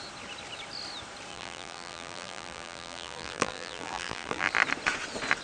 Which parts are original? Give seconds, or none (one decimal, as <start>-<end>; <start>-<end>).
0.0-1.3; 4.5-5.4